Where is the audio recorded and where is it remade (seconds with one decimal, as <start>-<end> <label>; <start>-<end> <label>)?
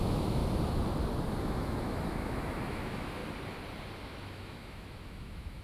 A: 0.0-0.4 remade; 0.4-1.4 recorded; 1.4-3.2 remade; 3.2-4.0 recorded; 4.0-5.6 remade